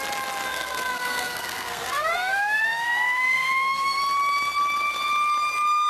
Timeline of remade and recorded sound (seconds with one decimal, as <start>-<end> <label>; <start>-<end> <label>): 0.0-0.5 recorded; 0.5-4.0 remade; 4.0-5.9 recorded